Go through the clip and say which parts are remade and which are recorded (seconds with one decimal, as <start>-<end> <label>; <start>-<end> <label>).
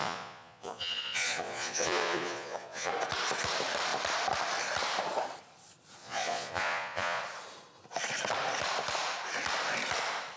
0.0-2.9 remade; 2.9-6.0 recorded; 6.0-7.2 remade; 7.2-10.4 recorded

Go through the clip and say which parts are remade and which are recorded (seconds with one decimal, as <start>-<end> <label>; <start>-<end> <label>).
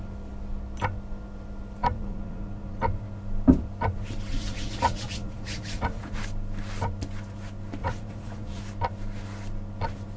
0.0-1.8 recorded; 1.8-2.8 remade; 2.8-4.3 recorded; 4.3-6.2 remade; 6.2-7.8 recorded; 7.8-8.6 remade; 8.6-10.2 recorded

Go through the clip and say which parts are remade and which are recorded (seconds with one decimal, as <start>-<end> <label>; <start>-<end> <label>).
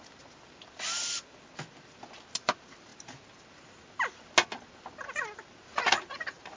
0.0-5.7 recorded; 5.7-6.6 remade